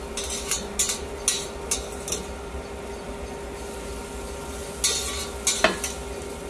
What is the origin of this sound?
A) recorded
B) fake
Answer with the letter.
A